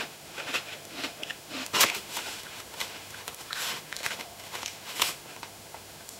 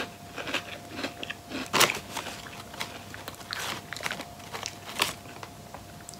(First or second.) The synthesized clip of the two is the first